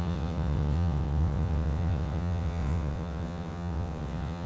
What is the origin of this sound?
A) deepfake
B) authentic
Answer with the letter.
A